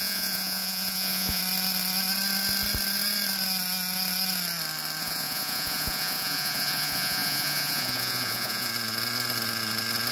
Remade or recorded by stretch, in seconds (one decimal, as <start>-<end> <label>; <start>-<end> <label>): 0.0-1.4 remade; 1.4-5.0 recorded; 5.0-8.7 remade; 8.7-10.1 recorded